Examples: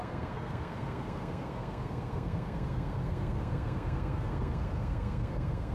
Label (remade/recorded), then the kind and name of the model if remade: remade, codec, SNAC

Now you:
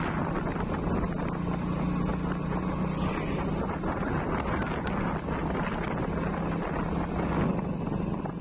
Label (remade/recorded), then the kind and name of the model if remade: recorded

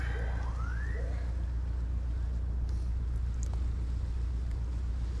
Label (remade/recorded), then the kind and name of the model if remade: recorded